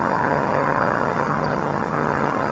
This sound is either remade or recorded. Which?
remade